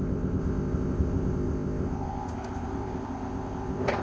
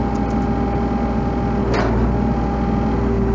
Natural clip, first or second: second